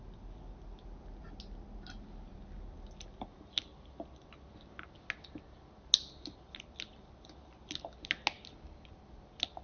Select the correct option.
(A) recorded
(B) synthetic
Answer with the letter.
A